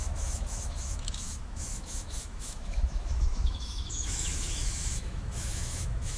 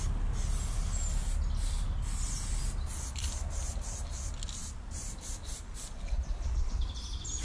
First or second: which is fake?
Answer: first